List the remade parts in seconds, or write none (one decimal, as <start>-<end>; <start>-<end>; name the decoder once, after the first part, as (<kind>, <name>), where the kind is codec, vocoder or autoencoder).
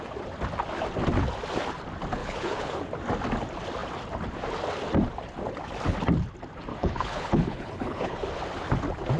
2.2-2.8 (codec, HILCodec); 6.7-8.3